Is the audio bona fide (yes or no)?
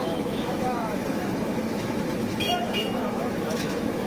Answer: no